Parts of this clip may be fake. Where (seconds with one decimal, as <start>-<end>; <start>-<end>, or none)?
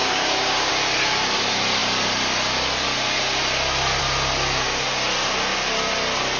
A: 0.0-0.7